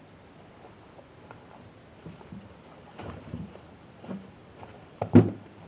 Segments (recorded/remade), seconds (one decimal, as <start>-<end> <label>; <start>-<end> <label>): 0.0-3.0 recorded; 3.0-5.7 remade